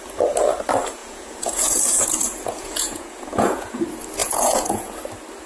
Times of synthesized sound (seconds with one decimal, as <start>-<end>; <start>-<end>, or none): 1.0-3.8; 4.2-4.9